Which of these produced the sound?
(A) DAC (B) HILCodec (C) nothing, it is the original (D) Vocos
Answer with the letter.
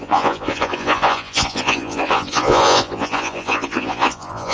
D